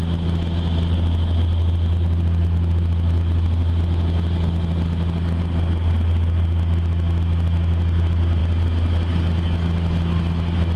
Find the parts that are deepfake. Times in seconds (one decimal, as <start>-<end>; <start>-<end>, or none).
none